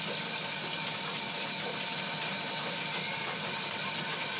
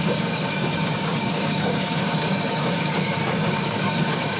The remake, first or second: second